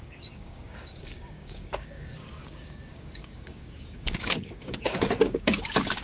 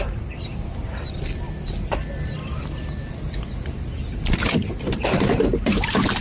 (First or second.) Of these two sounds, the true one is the second